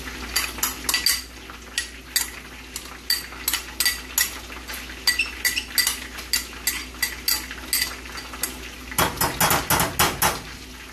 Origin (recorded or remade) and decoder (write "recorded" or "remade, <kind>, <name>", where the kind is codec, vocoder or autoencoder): recorded